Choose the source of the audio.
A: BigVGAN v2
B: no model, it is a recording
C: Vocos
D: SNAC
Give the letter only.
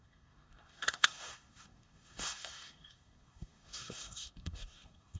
D